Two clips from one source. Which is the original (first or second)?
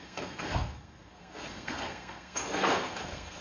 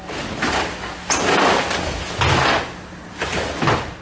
second